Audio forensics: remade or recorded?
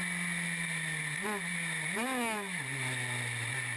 recorded